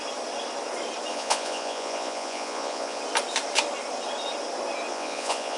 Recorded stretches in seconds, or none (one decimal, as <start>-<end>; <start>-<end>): 0.0-1.1; 3.0-4.9